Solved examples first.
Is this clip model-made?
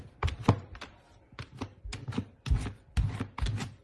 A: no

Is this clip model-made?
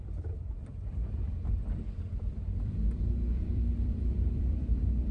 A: yes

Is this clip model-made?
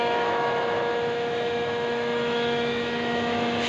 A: yes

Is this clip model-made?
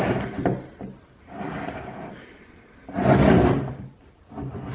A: no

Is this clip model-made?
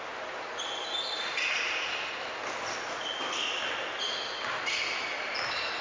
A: no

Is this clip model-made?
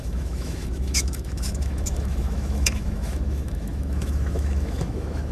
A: yes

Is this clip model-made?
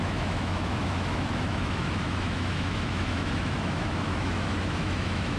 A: yes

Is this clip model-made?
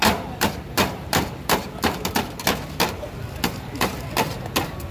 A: yes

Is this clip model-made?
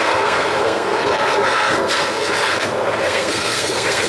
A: yes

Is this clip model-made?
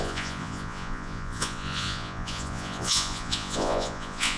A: yes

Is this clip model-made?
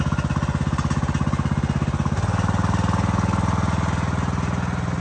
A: no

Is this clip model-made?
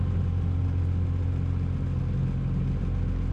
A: no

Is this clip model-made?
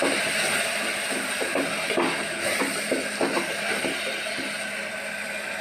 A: no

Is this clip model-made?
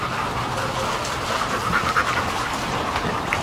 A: no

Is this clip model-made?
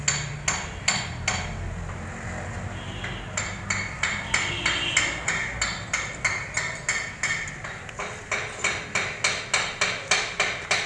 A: no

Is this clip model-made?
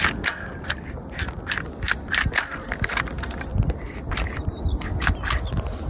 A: no